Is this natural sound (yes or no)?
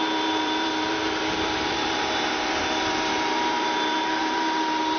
no